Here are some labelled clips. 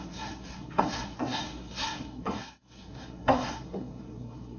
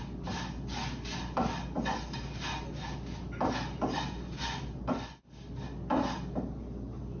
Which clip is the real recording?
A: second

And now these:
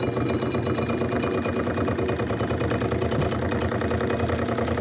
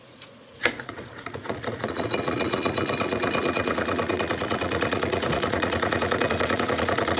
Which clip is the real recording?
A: first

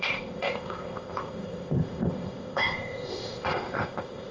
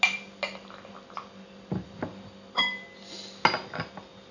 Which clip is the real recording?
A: second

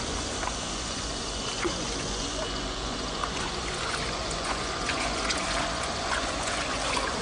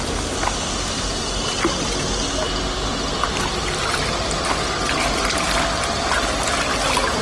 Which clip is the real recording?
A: second